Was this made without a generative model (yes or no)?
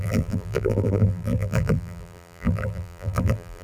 no